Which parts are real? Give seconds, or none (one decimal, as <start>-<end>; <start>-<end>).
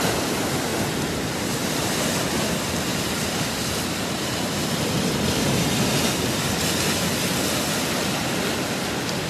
0.0-0.7; 1.4-2.9; 5.4-9.3